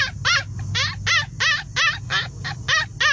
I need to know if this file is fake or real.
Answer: real